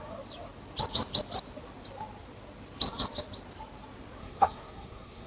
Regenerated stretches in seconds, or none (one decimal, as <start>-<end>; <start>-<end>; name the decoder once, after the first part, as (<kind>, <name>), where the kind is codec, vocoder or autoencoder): 4.2-5.3 (codec, SNAC)